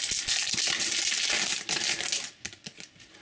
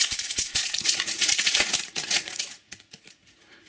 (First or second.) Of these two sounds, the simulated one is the second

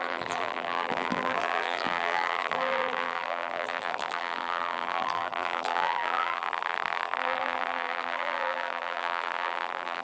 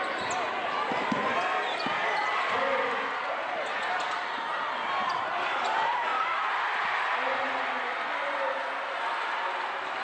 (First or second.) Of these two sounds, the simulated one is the first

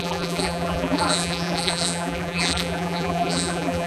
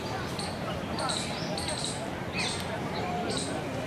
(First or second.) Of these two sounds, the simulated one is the first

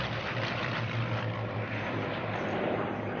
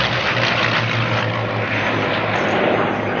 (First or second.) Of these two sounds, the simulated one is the first